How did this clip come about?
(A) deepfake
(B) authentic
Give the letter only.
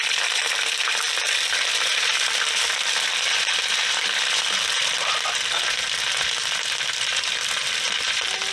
B